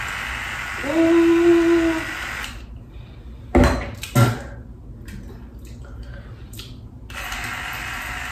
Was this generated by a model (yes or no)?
no